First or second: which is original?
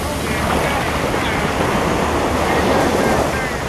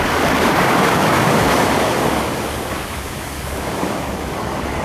first